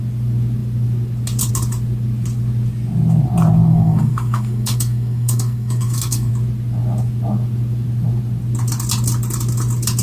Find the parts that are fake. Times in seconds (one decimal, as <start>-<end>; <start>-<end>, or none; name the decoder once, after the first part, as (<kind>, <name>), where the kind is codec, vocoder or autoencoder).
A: 3.7-6.3 (codec, SNAC)